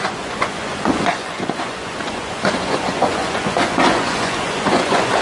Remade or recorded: remade